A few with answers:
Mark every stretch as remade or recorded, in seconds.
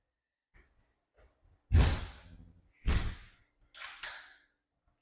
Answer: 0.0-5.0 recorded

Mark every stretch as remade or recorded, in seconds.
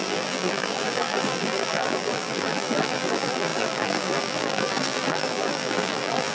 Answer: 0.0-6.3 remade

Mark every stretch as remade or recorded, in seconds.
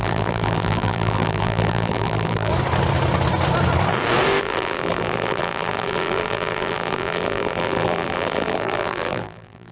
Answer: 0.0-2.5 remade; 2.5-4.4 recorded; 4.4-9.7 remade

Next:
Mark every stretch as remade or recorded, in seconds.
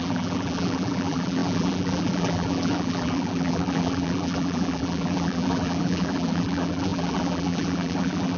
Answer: 0.0-8.4 remade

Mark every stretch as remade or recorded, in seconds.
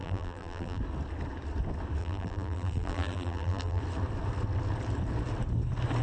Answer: 0.0-0.8 remade; 0.8-2.0 recorded; 2.0-3.8 remade; 3.8-6.0 recorded